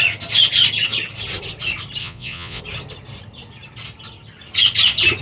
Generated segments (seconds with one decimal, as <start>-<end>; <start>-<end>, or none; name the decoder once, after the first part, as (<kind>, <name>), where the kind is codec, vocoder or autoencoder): 2.0-2.6 (vocoder, Vocos)

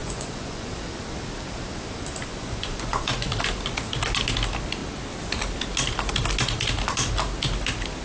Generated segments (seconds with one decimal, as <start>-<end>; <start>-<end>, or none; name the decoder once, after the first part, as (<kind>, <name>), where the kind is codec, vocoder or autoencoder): 0.0-0.7 (vocoder, Vocos); 2.3-3.3

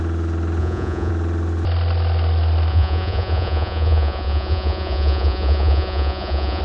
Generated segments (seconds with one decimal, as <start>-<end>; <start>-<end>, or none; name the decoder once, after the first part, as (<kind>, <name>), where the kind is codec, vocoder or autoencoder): 0.6-1.1 (vocoder, Vocos); 2.7-6.6

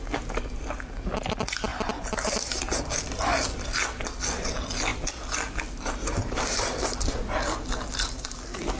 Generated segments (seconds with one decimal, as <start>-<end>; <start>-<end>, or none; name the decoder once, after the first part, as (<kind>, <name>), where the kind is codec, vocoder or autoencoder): none